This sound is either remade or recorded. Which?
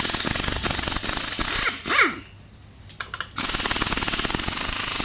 recorded